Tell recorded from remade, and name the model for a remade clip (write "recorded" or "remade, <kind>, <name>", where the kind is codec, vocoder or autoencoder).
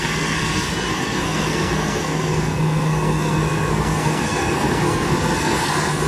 remade, codec, SNAC